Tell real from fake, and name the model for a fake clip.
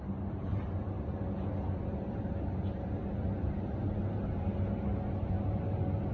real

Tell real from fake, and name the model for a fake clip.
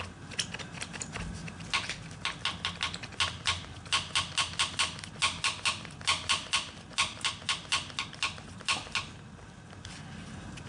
real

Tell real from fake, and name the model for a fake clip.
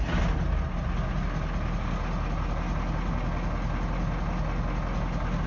real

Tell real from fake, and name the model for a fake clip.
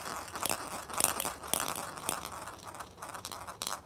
real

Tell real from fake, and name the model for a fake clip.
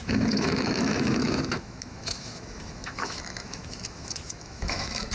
fake, autoencoder, DAC-VAE